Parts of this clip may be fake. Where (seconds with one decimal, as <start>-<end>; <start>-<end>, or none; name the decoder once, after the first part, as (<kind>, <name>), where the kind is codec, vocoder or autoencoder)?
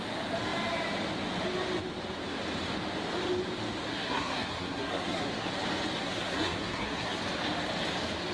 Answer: 3.9-5.5 (codec, SNAC); 6.0-7.2